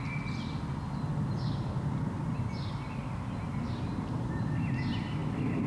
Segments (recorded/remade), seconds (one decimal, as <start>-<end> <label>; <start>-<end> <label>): 0.0-5.7 recorded